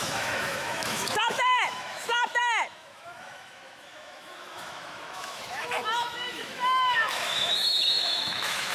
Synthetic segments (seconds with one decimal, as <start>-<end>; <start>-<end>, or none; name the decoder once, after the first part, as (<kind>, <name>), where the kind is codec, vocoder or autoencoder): 0.0-8.7 (autoencoder, DAC-VAE)